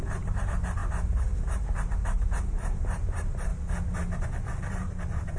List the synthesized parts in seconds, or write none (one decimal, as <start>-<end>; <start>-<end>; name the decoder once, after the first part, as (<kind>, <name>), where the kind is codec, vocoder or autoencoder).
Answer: 0.0-0.8 (vocoder, BigVGAN v2); 1.4-3.5; 4.7-5.4